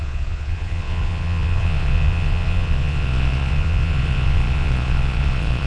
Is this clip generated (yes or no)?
yes